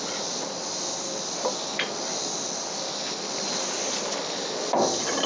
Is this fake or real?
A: real